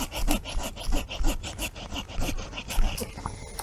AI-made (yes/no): no